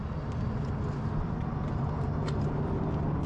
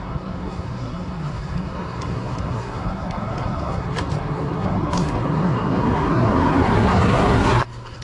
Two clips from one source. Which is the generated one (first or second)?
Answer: second